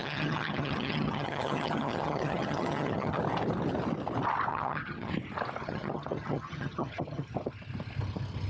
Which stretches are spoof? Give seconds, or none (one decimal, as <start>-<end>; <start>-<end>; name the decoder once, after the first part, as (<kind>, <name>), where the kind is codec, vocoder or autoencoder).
0.0-3.2 (vocoder, HiFi-GAN); 4.5-5.1; 5.6-7.3

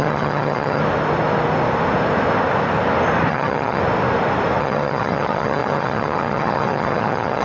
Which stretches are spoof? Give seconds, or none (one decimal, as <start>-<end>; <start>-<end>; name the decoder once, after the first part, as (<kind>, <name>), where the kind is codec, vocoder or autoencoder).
0.0-0.8 (vocoder, HiFi-GAN); 3.3-3.8; 4.6-7.4